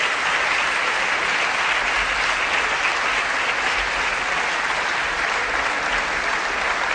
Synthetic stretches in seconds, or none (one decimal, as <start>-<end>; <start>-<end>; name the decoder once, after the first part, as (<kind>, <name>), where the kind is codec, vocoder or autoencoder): none